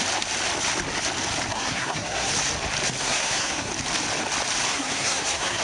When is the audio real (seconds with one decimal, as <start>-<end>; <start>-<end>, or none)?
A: 0.0-1.5; 2.3-3.0; 3.7-4.7